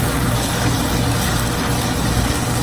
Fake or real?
real